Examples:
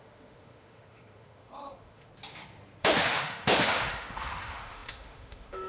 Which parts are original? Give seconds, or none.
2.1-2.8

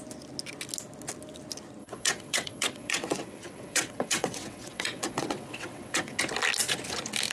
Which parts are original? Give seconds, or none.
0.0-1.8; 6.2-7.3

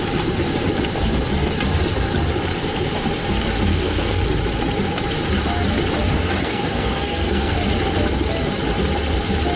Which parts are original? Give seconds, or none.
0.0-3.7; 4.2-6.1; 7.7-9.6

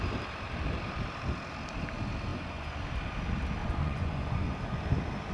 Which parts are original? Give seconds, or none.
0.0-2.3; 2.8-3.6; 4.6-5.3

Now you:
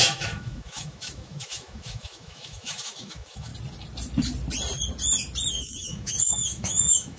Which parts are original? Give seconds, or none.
3.5-5.5

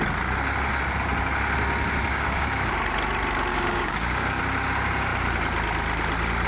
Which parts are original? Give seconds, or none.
0.0-2.1; 2.7-3.5; 4.4-6.5